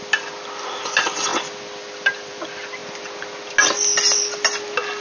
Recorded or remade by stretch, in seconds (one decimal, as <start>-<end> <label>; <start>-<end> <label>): 0.0-5.0 recorded